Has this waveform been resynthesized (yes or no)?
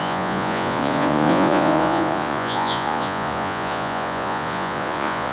yes